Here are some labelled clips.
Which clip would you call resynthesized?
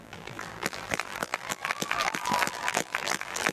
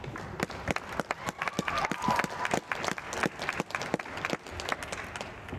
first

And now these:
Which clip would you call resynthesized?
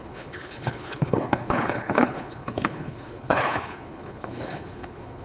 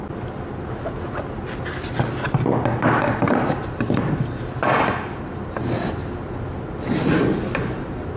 first